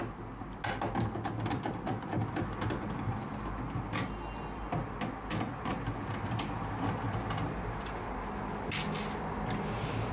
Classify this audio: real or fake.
real